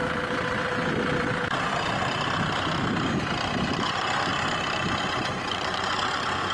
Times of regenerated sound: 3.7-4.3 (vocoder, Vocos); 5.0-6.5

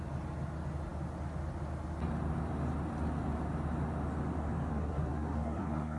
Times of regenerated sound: 4.7-6.0 (codec, SNAC)

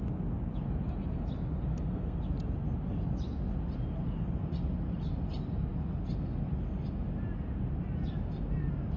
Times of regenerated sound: 1.7-2.2 (codec, SNAC)

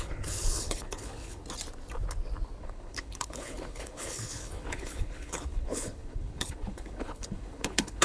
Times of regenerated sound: 0.0-1.4 (codec, HILCodec); 2.6-8.0

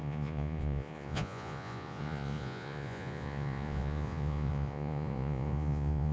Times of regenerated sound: 0.0-6.1 (vocoder, Vocos)

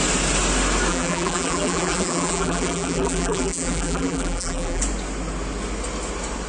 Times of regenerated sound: 0.9-4.8 (vocoder, BigVGAN v2)

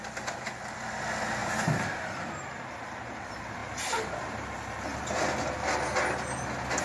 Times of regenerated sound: 1.4-2.2 (vocoder, BigVGAN v2); 3.6-4.4